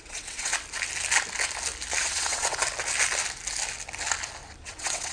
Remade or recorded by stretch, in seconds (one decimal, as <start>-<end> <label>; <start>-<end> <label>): 0.0-0.5 remade; 0.5-2.0 recorded; 2.0-2.6 remade; 2.6-4.6 recorded; 4.6-5.1 remade